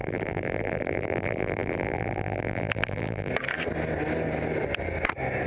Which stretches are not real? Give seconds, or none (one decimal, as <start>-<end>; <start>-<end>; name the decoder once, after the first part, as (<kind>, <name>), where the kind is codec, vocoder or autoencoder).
0.0-3.3 (vocoder, BigVGAN v2)